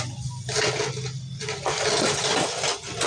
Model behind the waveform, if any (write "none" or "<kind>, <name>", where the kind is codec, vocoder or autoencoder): none